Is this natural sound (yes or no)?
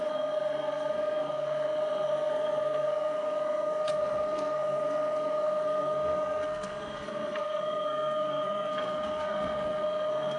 no